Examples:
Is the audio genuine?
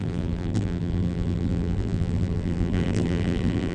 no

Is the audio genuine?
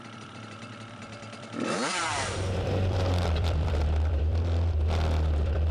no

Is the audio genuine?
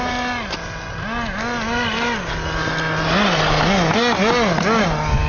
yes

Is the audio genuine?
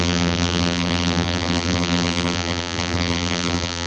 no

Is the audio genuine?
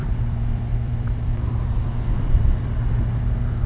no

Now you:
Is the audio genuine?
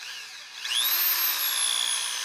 yes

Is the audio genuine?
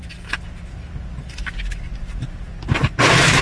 yes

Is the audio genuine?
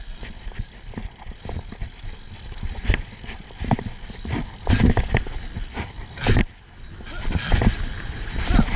yes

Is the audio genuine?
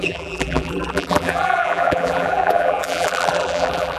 no